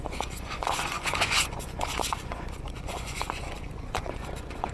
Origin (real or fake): fake